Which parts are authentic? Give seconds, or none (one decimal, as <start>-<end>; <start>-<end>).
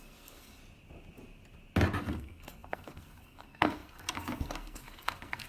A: 0.6-2.0